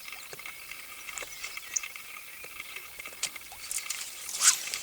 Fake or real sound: real